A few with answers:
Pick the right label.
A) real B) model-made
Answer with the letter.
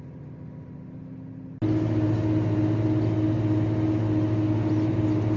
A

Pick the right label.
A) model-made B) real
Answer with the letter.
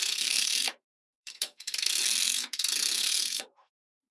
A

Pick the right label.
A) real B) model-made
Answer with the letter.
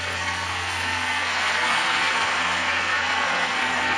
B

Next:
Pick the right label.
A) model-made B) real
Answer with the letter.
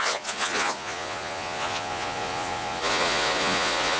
A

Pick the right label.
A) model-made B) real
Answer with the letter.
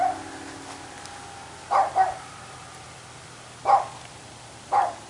B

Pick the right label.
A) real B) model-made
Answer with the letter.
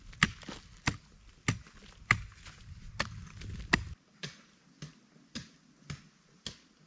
A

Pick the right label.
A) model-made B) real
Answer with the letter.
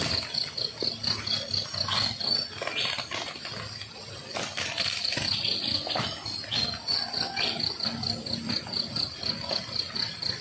B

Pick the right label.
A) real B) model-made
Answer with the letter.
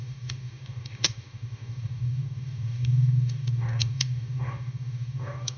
B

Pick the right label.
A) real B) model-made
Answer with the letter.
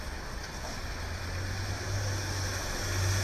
A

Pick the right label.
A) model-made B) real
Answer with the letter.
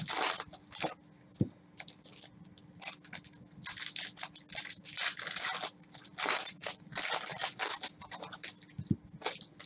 B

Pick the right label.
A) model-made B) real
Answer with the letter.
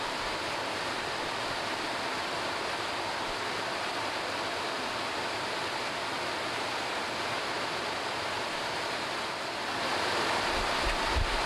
B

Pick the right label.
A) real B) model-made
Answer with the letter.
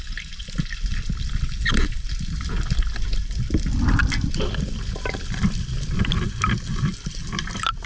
A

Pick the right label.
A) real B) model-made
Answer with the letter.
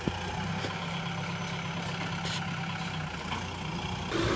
A